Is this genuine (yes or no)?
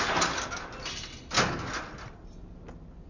yes